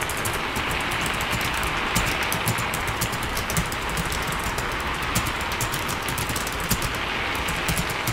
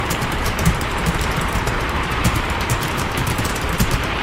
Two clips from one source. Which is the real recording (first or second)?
first